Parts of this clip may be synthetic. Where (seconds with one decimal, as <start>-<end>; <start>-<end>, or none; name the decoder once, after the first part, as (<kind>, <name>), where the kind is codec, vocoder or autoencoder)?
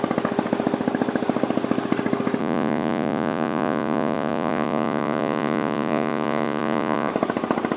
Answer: 2.4-7.1 (vocoder, Vocos)